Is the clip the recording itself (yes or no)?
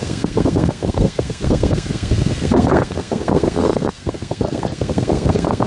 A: no